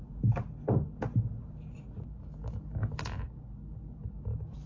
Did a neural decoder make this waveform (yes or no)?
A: no